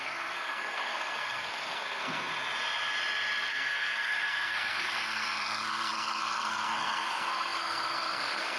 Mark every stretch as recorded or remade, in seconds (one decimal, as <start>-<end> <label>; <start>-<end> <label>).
0.0-2.3 remade; 2.3-3.5 recorded; 3.5-8.6 remade